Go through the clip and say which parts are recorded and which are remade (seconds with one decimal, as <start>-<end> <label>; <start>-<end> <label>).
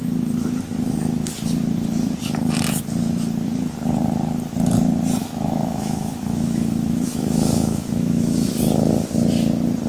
0.0-5.2 recorded; 5.2-8.5 remade; 8.5-9.9 recorded